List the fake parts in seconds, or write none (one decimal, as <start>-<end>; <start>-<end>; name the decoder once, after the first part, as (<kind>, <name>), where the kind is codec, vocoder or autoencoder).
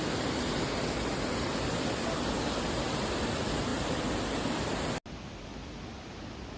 none